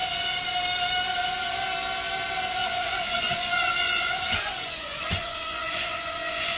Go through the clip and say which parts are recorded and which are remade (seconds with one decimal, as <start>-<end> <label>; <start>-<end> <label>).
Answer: 0.0-2.6 recorded; 2.6-6.6 remade